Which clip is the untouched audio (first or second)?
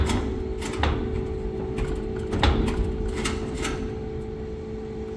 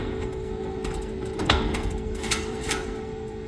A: first